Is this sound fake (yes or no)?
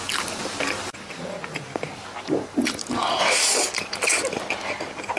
no